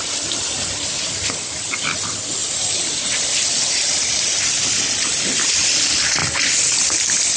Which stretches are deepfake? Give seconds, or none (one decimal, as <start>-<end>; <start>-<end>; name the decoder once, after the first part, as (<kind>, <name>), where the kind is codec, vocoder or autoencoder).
2.4-3.7 (vocoder, BigVGAN v2)